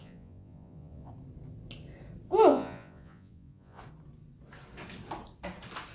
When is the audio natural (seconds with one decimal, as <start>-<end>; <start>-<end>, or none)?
1.1-2.5; 3.8-5.9